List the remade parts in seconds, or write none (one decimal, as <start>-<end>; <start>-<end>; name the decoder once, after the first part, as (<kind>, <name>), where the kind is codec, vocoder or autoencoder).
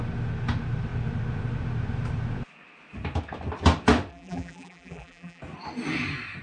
4.1-5.4 (vocoder, BigVGAN v2)